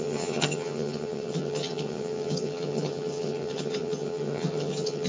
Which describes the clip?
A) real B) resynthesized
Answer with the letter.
B